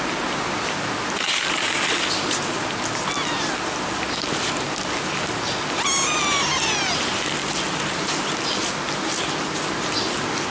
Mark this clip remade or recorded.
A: recorded